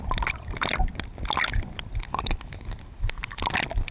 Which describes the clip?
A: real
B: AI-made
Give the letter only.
A